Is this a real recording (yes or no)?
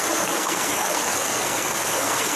no